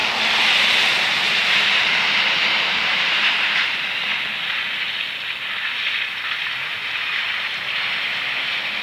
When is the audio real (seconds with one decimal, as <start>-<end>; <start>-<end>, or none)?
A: 0.0-0.9; 4.1-5.4